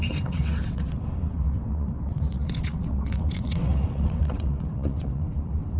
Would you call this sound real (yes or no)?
no